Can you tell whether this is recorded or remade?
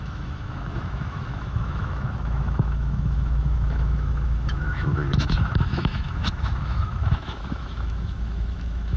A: remade